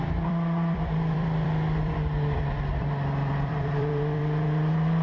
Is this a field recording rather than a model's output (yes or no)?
no